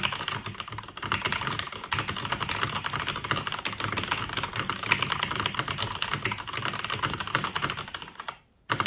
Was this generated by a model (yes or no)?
no